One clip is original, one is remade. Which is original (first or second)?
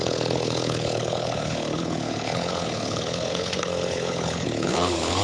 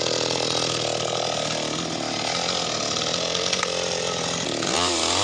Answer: second